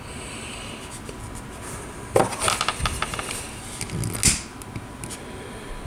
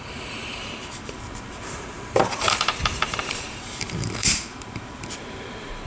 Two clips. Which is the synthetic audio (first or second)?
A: second